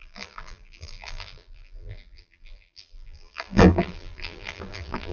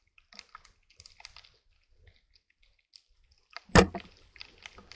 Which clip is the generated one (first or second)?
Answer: first